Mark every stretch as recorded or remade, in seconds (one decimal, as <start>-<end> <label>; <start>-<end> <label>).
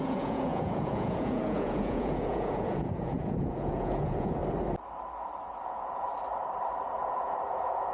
0.0-4.4 remade; 4.4-5.6 recorded; 5.6-6.1 remade; 6.1-6.8 recorded; 6.8-7.9 remade